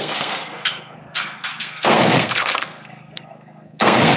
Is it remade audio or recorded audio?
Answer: remade